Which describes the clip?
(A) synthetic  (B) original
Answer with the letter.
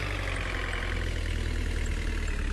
B